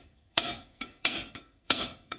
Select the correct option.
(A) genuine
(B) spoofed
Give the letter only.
B